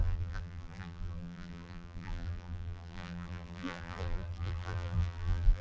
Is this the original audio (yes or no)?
no